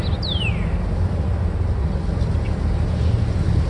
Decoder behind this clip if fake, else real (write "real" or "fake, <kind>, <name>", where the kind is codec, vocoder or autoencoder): real